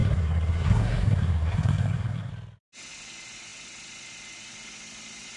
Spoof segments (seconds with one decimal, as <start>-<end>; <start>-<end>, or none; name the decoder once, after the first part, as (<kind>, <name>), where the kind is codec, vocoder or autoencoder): 0.0-2.3 (codec, SNAC)